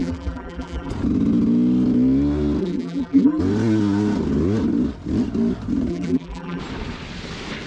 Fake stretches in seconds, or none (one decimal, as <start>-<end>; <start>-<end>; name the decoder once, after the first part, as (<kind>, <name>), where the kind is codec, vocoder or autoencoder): 0.0-0.9 (vocoder, BigVGAN v2); 2.6-3.4; 5.9-6.6